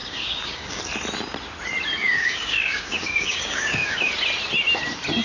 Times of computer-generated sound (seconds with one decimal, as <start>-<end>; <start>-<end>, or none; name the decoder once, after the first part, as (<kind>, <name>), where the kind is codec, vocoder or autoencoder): 0.0-0.8 (codec, DAC); 2.0-4.1